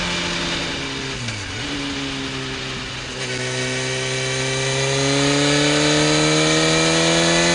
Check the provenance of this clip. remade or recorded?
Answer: recorded